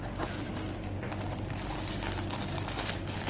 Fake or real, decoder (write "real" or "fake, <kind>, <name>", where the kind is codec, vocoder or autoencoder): real